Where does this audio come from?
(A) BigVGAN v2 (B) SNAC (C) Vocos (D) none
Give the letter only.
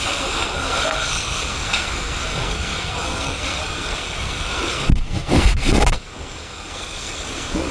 B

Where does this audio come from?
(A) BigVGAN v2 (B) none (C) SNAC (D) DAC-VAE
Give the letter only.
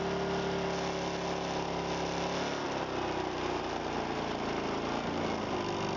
B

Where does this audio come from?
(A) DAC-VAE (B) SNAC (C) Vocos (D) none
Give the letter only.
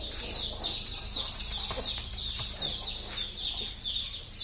D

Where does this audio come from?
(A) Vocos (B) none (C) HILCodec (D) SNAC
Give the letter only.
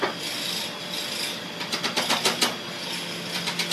B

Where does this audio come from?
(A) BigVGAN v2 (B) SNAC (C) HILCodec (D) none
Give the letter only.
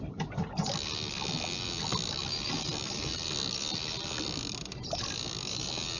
D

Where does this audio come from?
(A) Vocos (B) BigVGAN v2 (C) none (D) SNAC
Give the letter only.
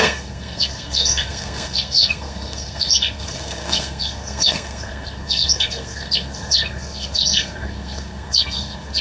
D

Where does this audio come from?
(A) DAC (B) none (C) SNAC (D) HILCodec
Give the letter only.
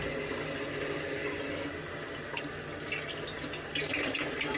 B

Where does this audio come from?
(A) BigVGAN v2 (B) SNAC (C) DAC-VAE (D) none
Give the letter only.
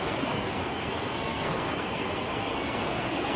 B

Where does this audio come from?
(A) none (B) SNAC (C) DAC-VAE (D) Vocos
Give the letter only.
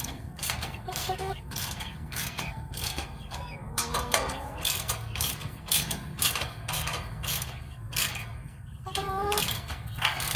B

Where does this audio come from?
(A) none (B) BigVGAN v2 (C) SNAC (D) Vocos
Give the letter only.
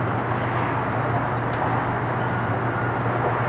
A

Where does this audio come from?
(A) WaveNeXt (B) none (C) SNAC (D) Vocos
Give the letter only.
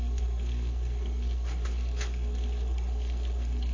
C